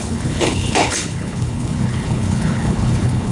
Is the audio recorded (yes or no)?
no